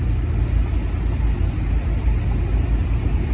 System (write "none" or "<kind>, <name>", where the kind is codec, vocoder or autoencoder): none